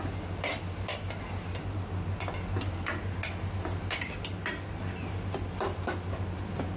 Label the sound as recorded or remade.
recorded